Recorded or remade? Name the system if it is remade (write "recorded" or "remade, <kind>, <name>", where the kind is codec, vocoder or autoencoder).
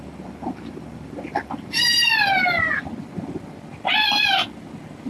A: remade, vocoder, BigVGAN v2